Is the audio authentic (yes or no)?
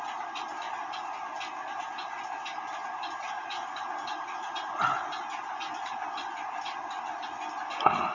yes